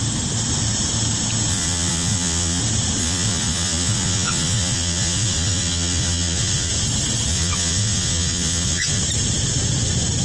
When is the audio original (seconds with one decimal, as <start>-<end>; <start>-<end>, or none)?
0.0-1.5; 2.6-3.0; 6.7-7.3; 9.0-10.2